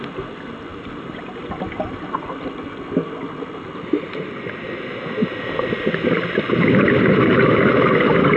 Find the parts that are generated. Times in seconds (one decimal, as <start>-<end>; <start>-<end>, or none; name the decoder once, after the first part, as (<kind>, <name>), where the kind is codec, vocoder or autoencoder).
0.7-2.1 (vocoder, BigVGAN v2)

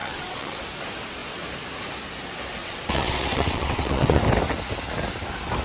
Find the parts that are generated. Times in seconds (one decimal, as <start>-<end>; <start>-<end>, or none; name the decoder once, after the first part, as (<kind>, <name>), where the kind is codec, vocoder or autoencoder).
0.0-0.6 (vocoder, WaveNeXt); 2.6-4.2

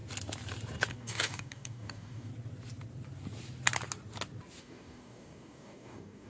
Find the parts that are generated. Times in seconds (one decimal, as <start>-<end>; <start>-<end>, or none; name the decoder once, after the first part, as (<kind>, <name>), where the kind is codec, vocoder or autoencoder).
0.9-2.3 (codec, DAC); 4.6-6.3

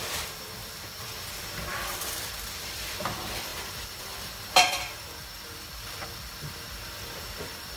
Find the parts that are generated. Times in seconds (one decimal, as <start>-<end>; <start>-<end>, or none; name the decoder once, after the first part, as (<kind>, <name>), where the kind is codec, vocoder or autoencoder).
0.0-7.8 (vocoder, BigVGAN v2)

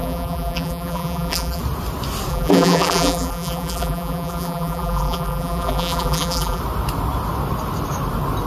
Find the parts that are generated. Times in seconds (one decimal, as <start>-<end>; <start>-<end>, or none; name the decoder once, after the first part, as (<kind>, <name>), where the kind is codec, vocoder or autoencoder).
0.0-1.6 (vocoder, BigVGAN v2); 2.3-6.6

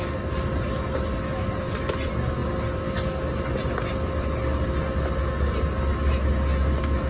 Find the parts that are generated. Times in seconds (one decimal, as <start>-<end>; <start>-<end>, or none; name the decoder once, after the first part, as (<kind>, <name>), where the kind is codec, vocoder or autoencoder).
none